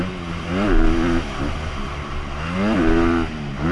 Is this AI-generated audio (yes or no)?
no